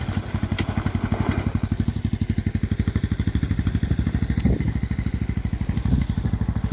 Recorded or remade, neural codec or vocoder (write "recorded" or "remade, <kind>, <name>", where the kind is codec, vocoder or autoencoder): recorded